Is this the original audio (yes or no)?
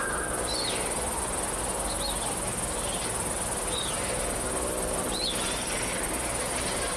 yes